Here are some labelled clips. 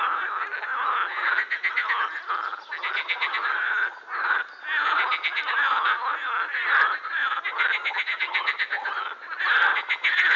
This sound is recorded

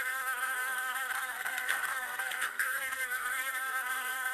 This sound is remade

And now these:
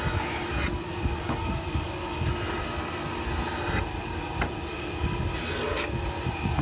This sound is recorded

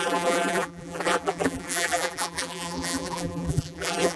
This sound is remade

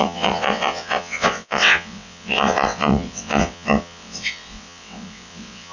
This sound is remade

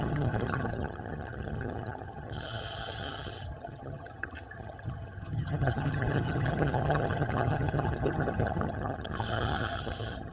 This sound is remade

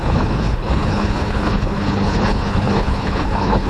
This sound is remade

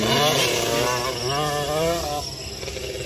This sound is recorded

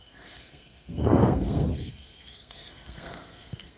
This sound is remade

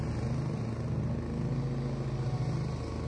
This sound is recorded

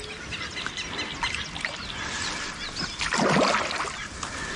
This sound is recorded